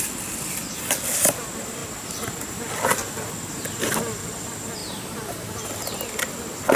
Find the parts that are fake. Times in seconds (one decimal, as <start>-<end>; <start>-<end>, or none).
4.8-5.6